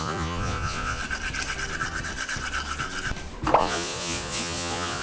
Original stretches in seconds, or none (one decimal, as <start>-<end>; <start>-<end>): 1.0-3.6

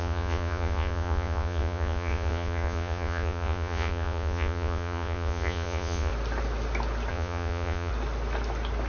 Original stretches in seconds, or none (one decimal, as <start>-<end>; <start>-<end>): 6.1-7.1; 7.9-8.9

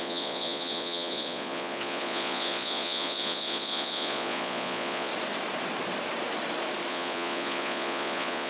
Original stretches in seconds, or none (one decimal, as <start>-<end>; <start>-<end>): 5.1-6.9

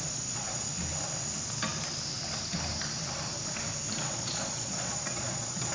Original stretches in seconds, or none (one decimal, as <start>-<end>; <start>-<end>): 0.7-4.1